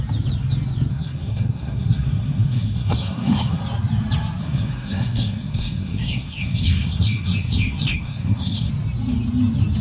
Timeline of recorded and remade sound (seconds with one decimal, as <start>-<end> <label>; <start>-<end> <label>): 0.0-0.9 recorded; 0.9-3.6 remade; 3.6-4.4 recorded; 4.4-8.7 remade; 8.7-9.8 recorded